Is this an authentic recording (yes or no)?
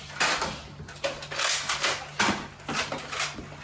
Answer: yes